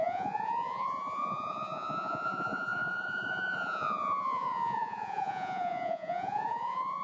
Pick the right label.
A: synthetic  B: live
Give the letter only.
A